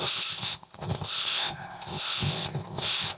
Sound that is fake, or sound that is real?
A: fake